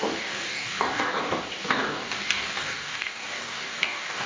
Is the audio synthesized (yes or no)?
yes